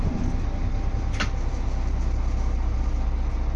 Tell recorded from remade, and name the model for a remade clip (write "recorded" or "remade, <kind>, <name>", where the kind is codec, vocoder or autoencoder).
recorded